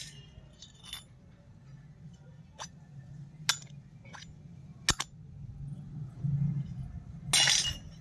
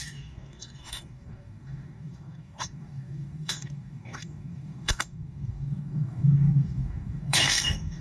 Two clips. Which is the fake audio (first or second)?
second